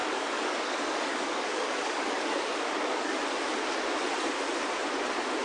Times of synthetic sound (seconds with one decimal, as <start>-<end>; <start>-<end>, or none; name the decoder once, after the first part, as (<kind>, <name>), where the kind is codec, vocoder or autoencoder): 0.0-3.2 (codec, DAC)